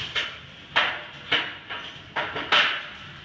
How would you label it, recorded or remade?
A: recorded